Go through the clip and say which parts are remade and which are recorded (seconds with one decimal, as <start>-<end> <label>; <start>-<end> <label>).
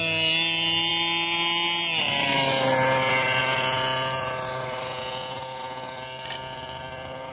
0.0-7.3 recorded